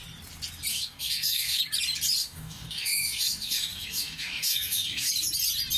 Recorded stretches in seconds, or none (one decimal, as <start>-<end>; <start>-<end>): 0.0-0.7; 1.6-2.2; 5.1-5.8